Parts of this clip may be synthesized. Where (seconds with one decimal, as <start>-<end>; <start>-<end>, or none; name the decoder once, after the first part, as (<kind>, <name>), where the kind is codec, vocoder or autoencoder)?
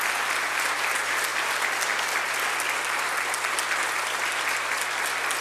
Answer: none